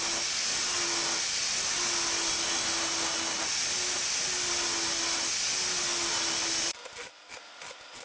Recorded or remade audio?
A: recorded